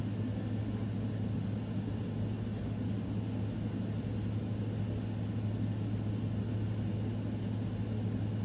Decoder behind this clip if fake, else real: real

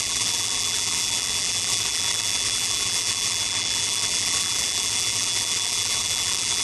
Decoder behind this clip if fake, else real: fake, vocoder, BigVGAN v2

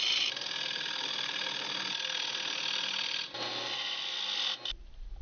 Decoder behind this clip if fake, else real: real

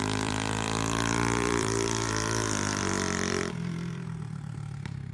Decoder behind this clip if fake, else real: fake, vocoder, BigVGAN v2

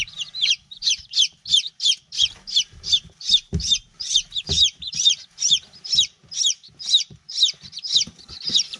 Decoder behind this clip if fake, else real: fake, vocoder, BigVGAN v2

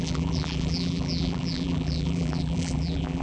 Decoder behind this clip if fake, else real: fake, vocoder, BigVGAN v2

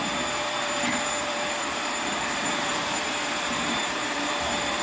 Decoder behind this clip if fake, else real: fake, vocoder, BigVGAN v2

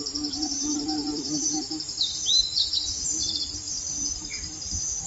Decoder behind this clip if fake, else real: fake, vocoder, BigVGAN v2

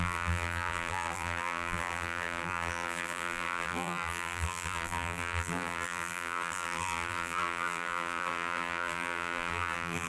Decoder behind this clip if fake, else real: fake, vocoder, BigVGAN v2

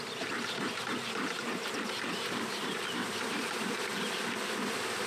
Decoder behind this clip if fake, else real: fake, vocoder, BigVGAN v2